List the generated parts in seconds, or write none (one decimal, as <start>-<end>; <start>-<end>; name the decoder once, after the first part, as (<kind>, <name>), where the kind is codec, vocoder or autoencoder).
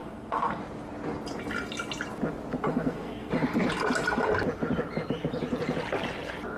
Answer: 0.0-0.6 (codec, SNAC); 2.7-3.3